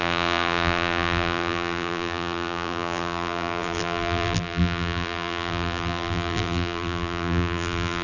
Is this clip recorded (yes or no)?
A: no